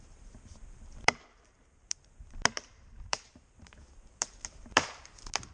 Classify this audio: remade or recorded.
remade